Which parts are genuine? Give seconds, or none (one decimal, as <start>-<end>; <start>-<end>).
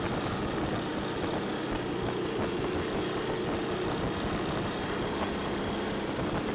0.0-6.5